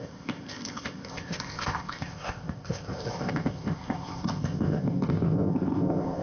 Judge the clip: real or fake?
fake